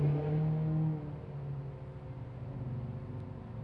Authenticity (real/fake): real